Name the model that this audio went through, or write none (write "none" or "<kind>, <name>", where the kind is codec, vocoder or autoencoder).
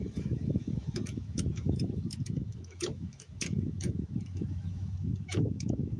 autoencoder, DAC-VAE